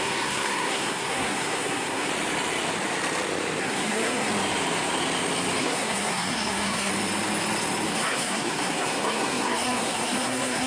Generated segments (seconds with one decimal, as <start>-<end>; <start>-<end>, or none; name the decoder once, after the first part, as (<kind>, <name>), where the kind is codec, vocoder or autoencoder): 0.0-2.1 (codec, SNAC); 3.6-4.3; 5.6-6.9; 7.9-10.7